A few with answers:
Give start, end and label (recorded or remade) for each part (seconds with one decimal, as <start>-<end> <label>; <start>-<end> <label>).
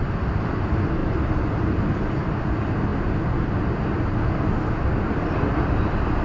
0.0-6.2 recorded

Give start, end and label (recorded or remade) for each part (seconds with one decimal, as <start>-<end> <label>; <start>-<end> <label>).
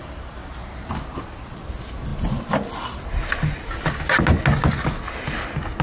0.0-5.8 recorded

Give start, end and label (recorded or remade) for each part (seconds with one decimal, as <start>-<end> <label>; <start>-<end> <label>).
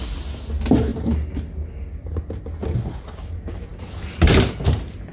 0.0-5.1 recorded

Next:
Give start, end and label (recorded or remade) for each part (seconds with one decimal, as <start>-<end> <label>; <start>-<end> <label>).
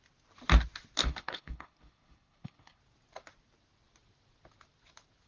0.0-1.0 recorded; 1.0-2.8 remade; 2.8-5.3 recorded